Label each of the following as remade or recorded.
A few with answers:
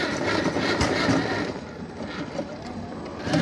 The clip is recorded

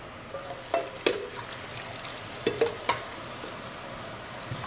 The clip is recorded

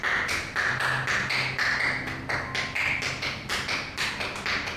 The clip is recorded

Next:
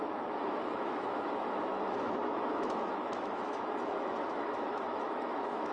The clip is remade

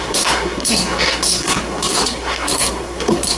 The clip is remade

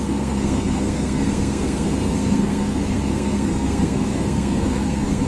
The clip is remade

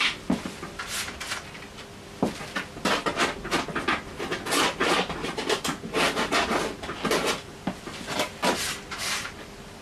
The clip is recorded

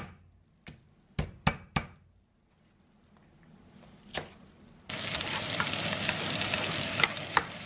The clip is recorded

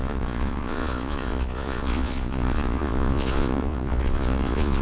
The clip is remade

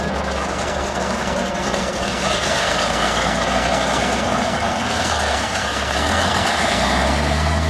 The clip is remade